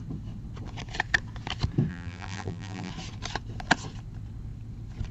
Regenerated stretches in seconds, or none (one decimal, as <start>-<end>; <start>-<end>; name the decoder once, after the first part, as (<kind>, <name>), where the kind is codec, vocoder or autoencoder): 1.9-2.9 (vocoder, BigVGAN v2)